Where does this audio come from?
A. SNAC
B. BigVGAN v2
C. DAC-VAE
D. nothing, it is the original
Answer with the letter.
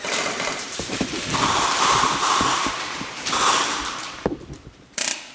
B